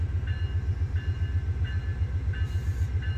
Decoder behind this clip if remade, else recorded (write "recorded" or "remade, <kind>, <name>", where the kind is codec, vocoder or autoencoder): recorded